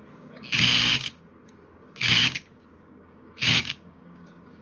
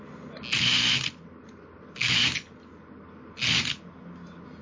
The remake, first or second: first